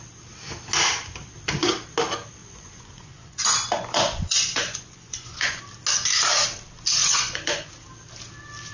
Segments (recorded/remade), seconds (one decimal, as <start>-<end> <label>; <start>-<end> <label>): 0.0-2.4 recorded; 2.4-5.6 remade; 5.6-7.0 recorded; 7.0-7.7 remade; 7.7-8.7 recorded